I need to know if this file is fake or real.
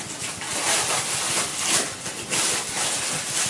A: real